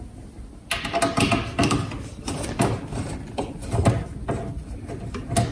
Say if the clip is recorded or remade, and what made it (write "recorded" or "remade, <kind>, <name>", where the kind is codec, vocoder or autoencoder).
recorded